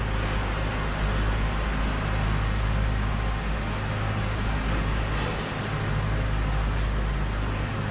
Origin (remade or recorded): recorded